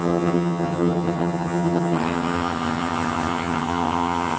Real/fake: fake